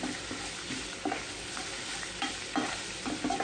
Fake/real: real